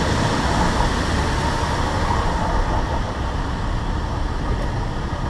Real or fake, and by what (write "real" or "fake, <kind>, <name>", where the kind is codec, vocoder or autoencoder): real